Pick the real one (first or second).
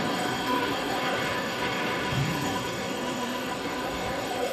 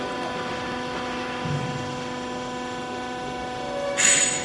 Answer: second